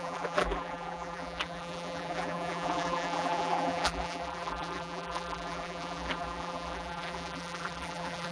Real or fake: fake